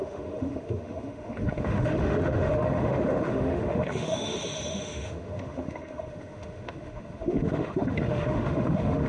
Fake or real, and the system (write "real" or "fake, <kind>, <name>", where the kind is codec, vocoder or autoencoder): fake, autoencoder, DAC-VAE